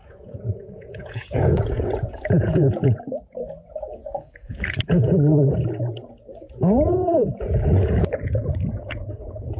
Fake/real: fake